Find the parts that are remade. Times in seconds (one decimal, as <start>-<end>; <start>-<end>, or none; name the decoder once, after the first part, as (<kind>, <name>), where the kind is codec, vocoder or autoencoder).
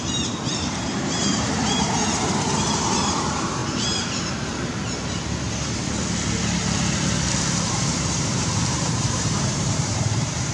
0.0-3.6 (vocoder, BigVGAN v2); 7.7-10.5